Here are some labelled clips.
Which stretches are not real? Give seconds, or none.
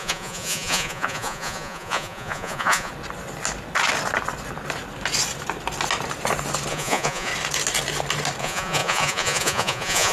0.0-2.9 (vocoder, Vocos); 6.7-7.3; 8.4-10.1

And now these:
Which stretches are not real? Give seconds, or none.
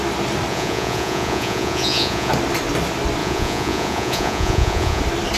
0.5-2.3 (vocoder, Vocos); 3.2-5.0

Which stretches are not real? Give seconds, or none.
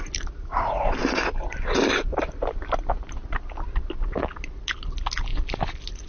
none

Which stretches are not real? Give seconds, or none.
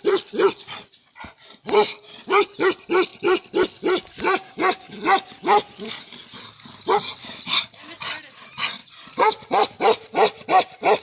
8.8-9.7 (vocoder, Vocos)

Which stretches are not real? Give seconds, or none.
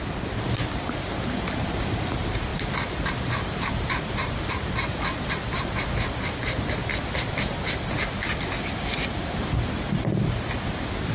none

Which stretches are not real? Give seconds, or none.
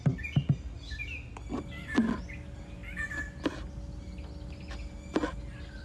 none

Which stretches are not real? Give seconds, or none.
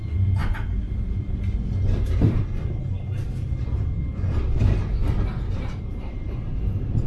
none